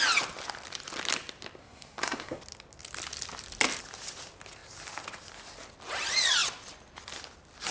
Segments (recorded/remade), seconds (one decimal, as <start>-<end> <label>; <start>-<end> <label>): 0.0-1.6 recorded; 1.6-2.4 remade; 2.4-7.7 recorded